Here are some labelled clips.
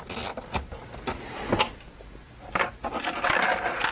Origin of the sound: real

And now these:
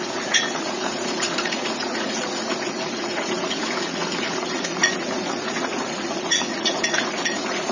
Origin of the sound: fake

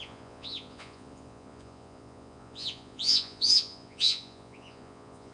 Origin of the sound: fake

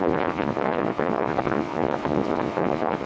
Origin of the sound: fake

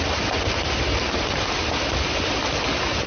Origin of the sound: real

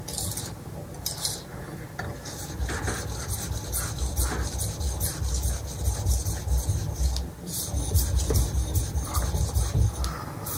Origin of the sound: real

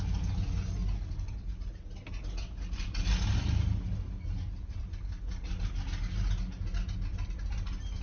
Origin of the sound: real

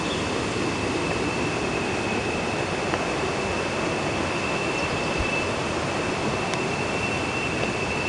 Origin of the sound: real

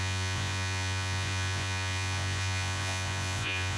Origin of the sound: fake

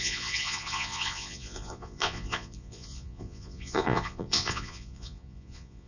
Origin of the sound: fake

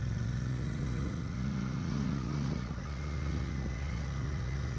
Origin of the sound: fake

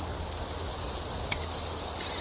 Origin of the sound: real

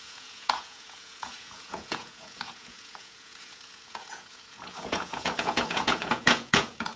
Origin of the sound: fake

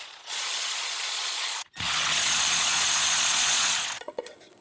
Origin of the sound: fake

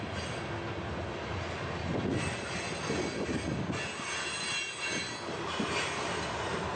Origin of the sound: real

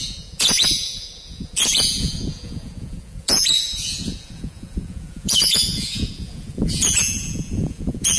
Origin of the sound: fake